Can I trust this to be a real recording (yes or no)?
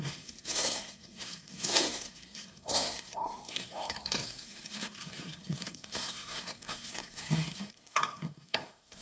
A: no